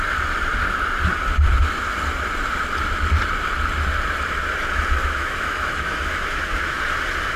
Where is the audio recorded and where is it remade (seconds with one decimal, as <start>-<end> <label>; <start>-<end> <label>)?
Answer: 0.0-5.0 recorded; 5.0-6.8 remade; 6.8-7.4 recorded

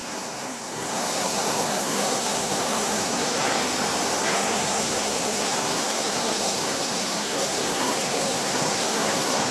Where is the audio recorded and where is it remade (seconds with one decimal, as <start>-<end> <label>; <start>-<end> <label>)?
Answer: 0.0-3.6 remade; 3.6-4.2 recorded; 4.2-9.5 remade

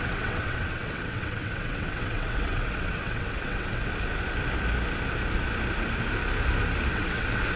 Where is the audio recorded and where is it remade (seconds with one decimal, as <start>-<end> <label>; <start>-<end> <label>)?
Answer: 0.0-3.9 remade; 3.9-6.9 recorded; 6.9-7.6 remade

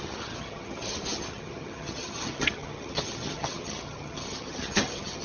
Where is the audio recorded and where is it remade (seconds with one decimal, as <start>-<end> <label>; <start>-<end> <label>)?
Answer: 0.0-5.2 remade

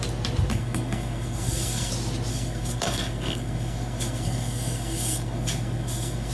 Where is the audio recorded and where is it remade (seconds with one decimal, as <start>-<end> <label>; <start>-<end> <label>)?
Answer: 0.0-0.5 recorded; 0.5-1.9 remade; 1.9-2.3 recorded; 2.3-6.3 remade